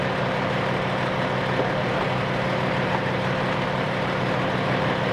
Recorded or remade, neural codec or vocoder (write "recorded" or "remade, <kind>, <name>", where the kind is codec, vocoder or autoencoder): recorded